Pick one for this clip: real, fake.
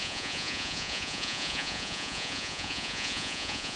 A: fake